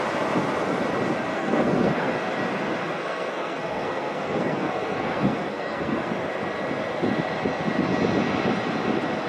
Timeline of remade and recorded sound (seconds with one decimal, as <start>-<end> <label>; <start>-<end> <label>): 0.0-1.3 recorded; 1.3-2.1 remade; 2.1-2.8 recorded; 2.8-6.1 remade; 6.1-9.3 recorded